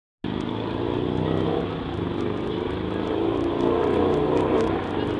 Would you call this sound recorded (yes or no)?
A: yes